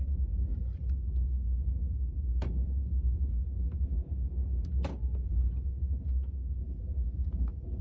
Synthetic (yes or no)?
yes